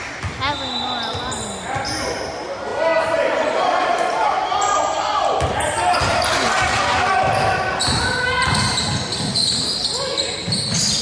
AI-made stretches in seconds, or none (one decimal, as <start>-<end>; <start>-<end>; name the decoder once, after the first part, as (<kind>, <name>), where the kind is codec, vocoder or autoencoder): 2.7-5.1 (vocoder, BigVGAN v2); 6.1-7.1

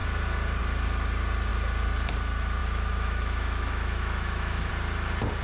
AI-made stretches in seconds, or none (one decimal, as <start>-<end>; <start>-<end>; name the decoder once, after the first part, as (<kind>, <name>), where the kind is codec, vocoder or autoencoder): 2.6-4.7 (autoencoder, DAC-VAE)